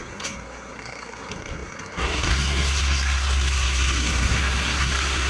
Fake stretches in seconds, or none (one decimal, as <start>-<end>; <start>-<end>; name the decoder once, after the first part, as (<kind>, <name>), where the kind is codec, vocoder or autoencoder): 0.0-5.3 (codec, SNAC)